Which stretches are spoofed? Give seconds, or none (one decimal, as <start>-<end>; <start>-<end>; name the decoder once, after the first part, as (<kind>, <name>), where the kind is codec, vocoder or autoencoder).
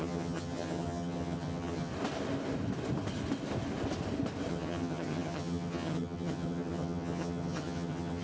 0.0-1.9 (vocoder, HiFi-GAN); 4.5-8.2